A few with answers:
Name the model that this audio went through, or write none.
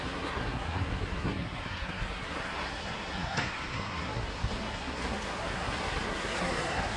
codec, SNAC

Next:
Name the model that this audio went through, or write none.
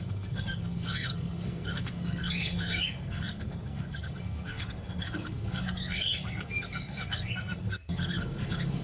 codec, SNAC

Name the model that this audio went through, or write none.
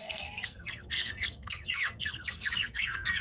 codec, SNAC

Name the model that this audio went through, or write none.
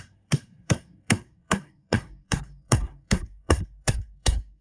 codec, SNAC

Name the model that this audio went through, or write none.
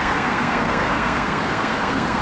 codec, SNAC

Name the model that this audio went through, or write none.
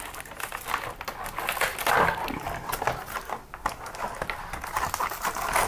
none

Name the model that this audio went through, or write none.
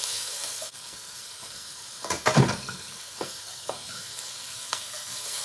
codec, SNAC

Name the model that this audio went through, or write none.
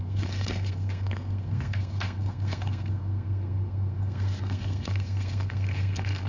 codec, SNAC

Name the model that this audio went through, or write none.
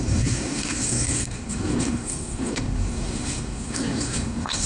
codec, SNAC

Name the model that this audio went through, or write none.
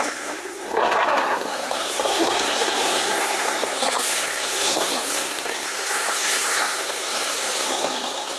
codec, SNAC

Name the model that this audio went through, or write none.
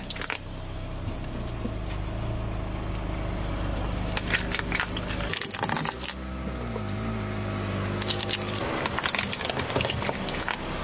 none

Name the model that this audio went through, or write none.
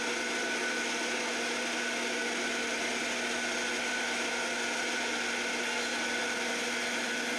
none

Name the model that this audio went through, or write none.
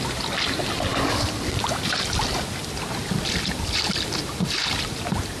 none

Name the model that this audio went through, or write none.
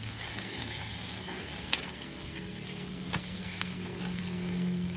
codec, SNAC